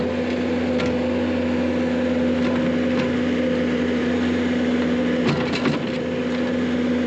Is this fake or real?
real